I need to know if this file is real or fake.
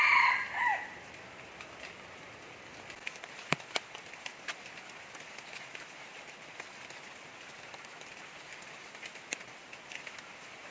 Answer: real